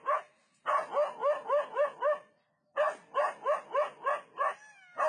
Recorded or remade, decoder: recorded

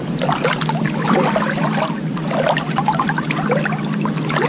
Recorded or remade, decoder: recorded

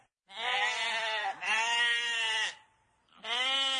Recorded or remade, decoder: recorded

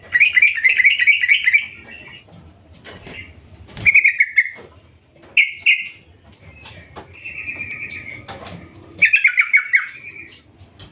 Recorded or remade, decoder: recorded